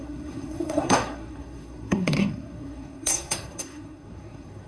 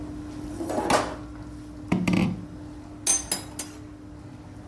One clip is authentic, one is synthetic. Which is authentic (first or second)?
second